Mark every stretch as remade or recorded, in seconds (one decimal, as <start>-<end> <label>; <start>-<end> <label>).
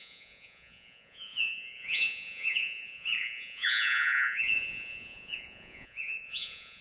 0.0-6.8 remade